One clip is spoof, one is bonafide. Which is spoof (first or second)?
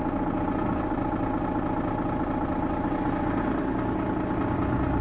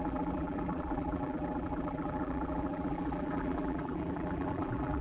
second